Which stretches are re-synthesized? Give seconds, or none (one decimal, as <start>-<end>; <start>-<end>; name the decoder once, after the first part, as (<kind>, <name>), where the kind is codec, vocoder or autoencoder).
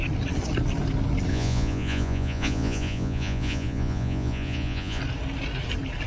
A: 1.3-5.0 (vocoder, Vocos)